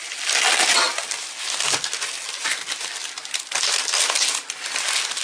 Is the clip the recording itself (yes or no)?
yes